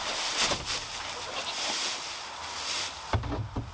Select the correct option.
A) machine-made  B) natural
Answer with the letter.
A